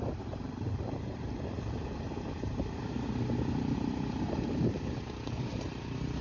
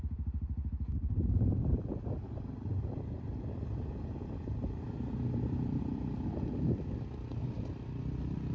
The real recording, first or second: second